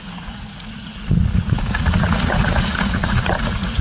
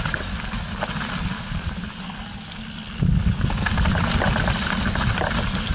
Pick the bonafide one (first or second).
second